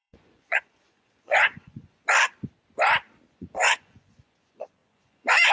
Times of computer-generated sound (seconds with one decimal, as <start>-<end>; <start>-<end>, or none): 0.0-2.0; 3.3-5.5